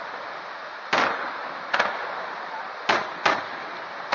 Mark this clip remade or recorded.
recorded